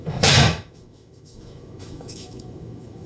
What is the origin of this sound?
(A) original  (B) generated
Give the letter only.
B